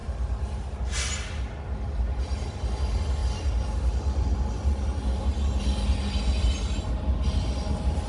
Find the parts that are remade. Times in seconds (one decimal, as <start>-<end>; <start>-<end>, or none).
none